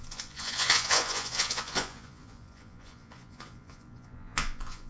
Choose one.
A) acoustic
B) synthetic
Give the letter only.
B